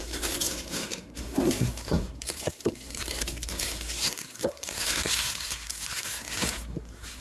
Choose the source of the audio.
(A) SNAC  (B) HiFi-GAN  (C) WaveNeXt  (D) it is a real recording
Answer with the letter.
A